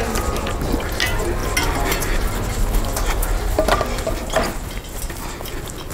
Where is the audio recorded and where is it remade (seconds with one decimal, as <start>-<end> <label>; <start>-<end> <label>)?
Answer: 0.0-5.9 recorded